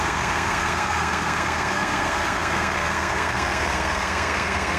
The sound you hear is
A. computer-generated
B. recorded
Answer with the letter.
A